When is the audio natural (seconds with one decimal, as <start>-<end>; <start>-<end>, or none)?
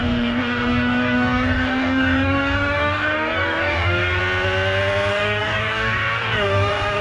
4.2-5.1